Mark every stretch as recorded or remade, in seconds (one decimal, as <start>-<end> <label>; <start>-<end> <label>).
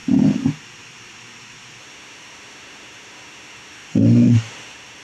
0.0-1.8 recorded; 1.8-5.0 remade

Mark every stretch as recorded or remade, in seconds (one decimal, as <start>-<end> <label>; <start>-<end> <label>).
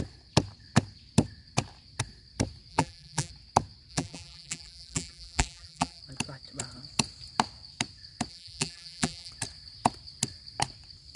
0.0-2.7 recorded; 2.7-3.3 remade; 3.3-3.9 recorded; 3.9-6.0 remade; 6.0-8.3 recorded; 8.3-9.3 remade; 9.3-11.2 recorded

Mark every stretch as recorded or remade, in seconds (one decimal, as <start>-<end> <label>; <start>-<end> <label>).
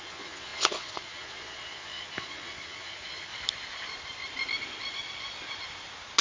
0.0-3.3 remade; 3.3-6.2 recorded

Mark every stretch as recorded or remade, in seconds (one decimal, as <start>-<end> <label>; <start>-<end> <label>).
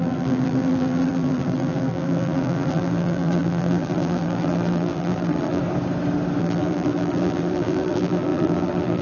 0.0-5.6 remade; 5.6-6.4 recorded; 6.4-9.0 remade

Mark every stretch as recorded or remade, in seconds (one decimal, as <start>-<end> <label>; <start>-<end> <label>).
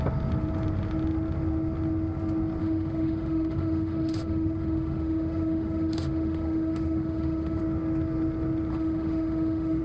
0.0-2.6 recorded; 2.6-7.6 remade; 7.6-8.7 recorded; 8.7-9.8 remade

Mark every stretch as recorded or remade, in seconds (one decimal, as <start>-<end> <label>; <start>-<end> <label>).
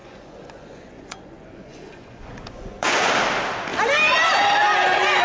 0.0-3.1 remade; 3.1-5.2 recorded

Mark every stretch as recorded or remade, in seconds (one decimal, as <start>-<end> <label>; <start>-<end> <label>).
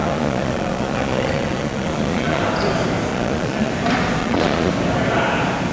0.0-2.4 remade; 2.4-3.1 recorded; 3.1-3.7 remade; 3.7-4.2 recorded; 4.2-4.7 remade; 4.7-5.7 recorded